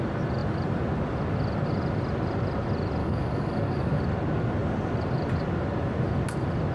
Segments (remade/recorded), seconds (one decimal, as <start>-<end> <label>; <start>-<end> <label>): 0.0-3.0 recorded; 3.0-4.0 remade; 4.0-6.7 recorded